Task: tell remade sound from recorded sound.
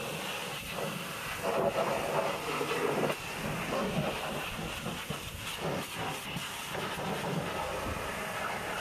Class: recorded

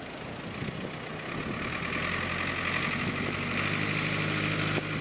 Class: recorded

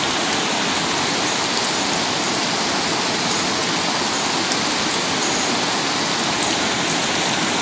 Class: recorded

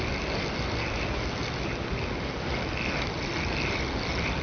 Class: recorded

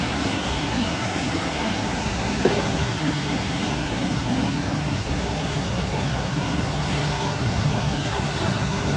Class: remade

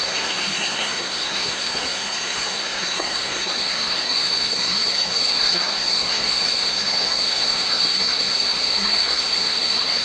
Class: remade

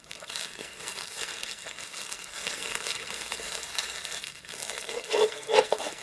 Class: remade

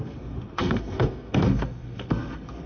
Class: remade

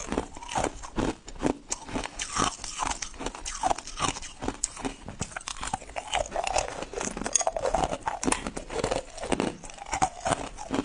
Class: recorded